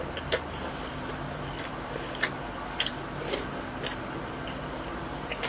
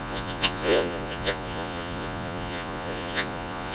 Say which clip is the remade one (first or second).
second